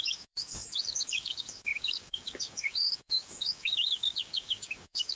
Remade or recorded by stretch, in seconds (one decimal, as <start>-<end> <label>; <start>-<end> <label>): 0.0-5.2 remade